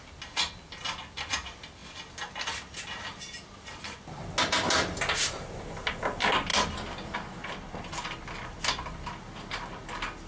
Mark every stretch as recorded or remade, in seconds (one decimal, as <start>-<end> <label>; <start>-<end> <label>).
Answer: 0.0-10.3 recorded